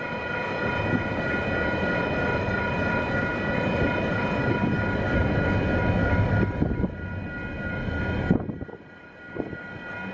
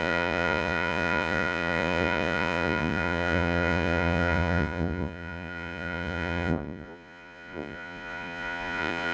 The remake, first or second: second